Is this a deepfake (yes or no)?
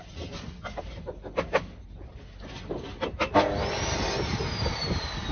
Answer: no